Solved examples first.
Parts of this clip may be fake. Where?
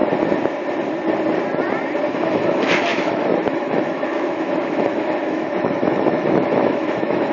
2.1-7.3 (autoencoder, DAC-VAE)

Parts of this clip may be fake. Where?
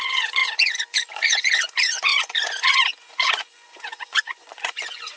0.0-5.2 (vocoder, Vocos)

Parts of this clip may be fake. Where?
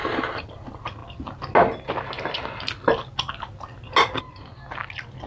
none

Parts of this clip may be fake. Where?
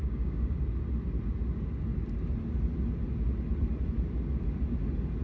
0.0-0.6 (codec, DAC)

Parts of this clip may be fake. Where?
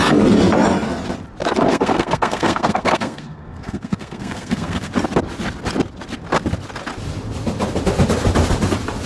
1.7-4.9 (codec, SNAC)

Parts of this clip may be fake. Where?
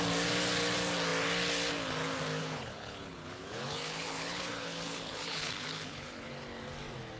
2.4-6.3 (codec, HILCodec)